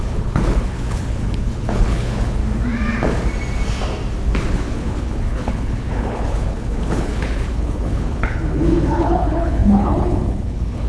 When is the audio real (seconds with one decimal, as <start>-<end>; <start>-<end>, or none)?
2.4-4.5